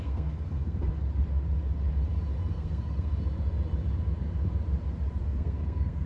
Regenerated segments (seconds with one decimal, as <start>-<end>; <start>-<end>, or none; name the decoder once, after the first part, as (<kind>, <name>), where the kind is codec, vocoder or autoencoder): 0.0-0.9 (codec, SNAC); 2.5-3.1; 5.2-6.1

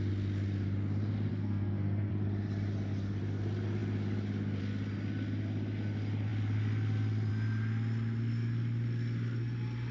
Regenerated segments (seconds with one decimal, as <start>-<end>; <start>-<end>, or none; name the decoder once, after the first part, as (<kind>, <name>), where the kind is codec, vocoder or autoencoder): 1.3-2.1 (codec, SNAC)

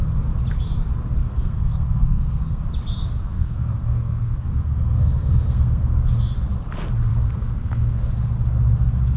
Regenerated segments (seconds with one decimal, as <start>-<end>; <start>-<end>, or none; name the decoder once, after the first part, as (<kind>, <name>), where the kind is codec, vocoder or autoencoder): 1.2-2.6 (codec, SNAC); 3.2-6.1; 7.1-8.1